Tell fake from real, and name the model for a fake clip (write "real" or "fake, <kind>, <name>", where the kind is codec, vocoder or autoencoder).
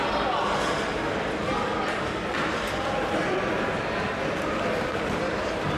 real